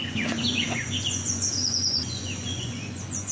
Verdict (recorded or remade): remade